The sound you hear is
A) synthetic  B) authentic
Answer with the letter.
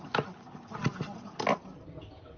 B